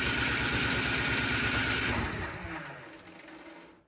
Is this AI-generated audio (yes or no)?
no